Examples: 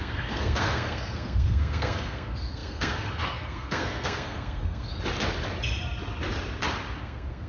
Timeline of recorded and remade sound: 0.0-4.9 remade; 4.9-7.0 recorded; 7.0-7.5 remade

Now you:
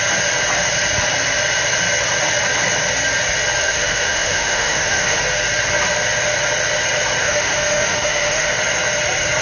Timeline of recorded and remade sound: 0.0-3.6 recorded; 3.6-5.2 remade; 5.2-7.2 recorded; 7.2-8.5 remade; 8.5-9.4 recorded

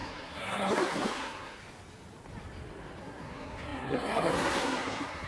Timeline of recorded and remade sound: 0.0-1.6 remade; 1.6-3.0 recorded; 3.0-5.3 remade

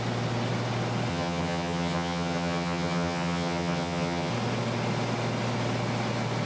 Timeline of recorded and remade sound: 0.0-1.1 recorded; 1.1-4.3 remade; 4.3-6.5 recorded

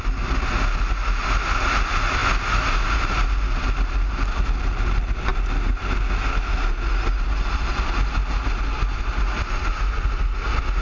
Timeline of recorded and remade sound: 0.0-10.8 recorded

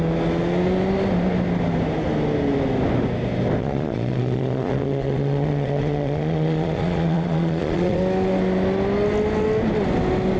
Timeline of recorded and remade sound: 0.0-3.6 recorded; 3.6-8.0 remade; 8.0-10.4 recorded

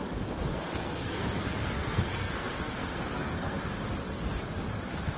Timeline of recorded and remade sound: 0.0-0.5 recorded; 0.5-3.6 remade; 3.6-5.2 recorded

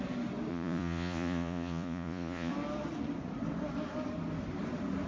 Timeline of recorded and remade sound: 0.0-0.5 recorded; 0.5-2.5 remade; 2.5-5.1 recorded